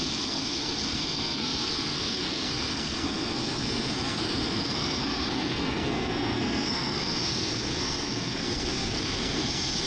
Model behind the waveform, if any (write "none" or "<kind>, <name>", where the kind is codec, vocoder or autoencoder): codec, SNAC